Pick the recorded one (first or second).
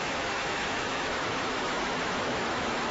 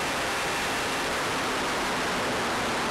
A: second